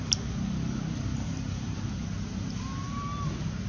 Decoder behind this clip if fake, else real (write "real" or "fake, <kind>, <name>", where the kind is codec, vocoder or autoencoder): real